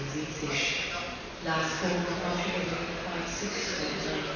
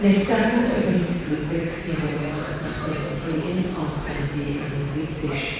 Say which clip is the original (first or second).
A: first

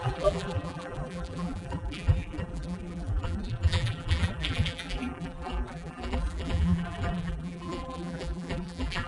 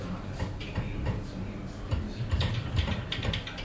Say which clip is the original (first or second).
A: second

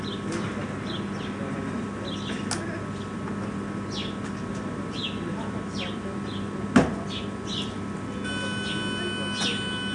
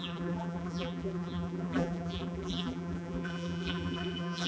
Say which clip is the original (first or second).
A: first